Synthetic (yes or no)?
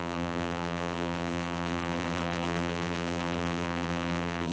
yes